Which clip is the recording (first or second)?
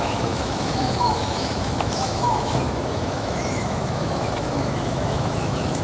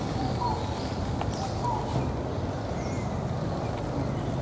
second